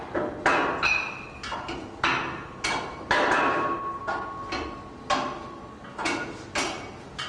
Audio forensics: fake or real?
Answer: real